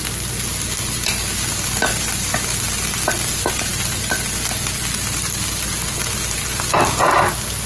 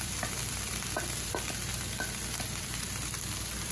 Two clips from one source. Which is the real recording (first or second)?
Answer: first